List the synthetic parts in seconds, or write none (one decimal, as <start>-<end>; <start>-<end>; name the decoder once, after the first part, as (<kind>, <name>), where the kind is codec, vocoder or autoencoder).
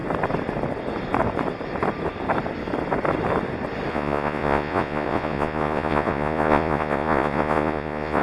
3.9-8.2 (vocoder, Vocos)